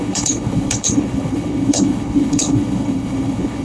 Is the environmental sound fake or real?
fake